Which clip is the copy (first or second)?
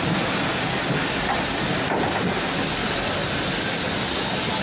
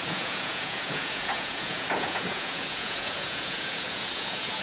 second